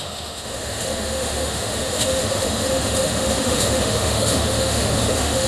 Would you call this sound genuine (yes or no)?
no